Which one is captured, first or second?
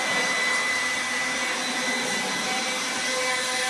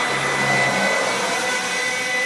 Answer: second